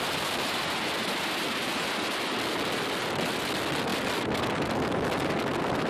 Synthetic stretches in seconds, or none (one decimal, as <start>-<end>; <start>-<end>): none

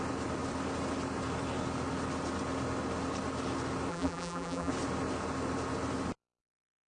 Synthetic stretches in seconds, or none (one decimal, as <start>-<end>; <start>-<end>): 3.9-4.7